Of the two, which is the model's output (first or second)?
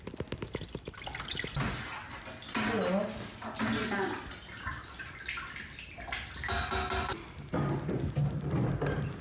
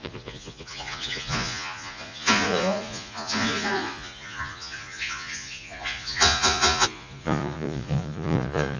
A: second